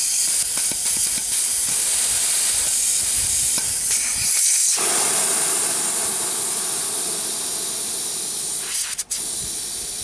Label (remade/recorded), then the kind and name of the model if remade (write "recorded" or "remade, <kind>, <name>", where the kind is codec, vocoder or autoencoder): recorded